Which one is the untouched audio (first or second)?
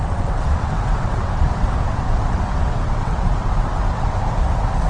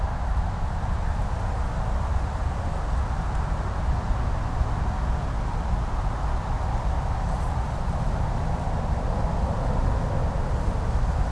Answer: second